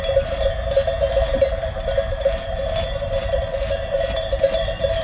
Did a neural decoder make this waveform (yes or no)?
no